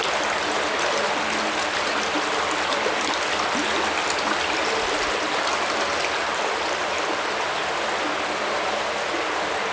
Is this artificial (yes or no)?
no